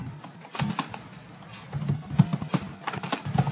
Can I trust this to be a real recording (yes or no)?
yes